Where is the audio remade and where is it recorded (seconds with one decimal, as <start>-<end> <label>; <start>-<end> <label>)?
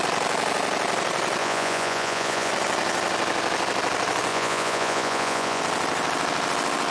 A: 0.0-1.4 recorded; 1.4-2.5 remade; 2.5-4.3 recorded; 4.3-5.6 remade; 5.6-6.9 recorded